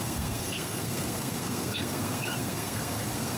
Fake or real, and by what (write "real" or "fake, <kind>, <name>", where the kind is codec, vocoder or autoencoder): fake, codec, SNAC